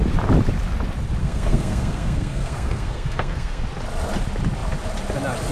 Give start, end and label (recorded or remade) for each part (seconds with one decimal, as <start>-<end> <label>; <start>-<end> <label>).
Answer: 0.0-1.2 recorded; 1.2-3.6 remade; 3.6-5.5 recorded